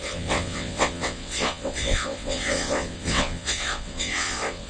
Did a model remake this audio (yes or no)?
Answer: yes